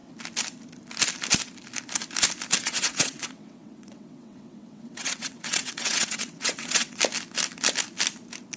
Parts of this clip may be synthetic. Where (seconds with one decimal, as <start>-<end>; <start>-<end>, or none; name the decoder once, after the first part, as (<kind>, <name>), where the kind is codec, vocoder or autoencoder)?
2.6-7.0 (vocoder, WaveNeXt)